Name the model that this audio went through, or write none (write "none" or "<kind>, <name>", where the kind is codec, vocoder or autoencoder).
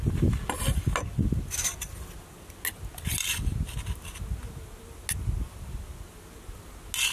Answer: none